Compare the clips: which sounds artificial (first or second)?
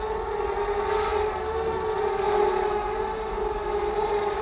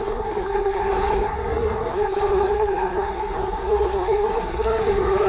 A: second